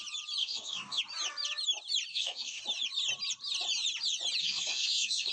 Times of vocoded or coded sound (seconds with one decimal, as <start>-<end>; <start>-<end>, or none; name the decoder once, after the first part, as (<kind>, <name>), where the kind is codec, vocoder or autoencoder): 0.4-1.0 (codec, DAC); 2.1-2.6; 4.4-5.3